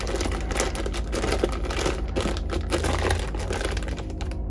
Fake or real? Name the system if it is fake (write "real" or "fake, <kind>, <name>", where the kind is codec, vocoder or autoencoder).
real